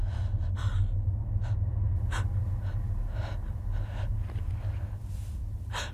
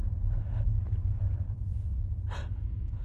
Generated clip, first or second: second